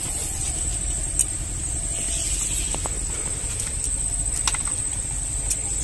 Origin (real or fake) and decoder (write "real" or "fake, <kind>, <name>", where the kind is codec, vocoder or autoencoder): real